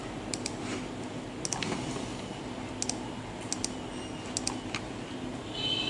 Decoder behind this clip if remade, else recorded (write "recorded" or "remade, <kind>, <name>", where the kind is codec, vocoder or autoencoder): recorded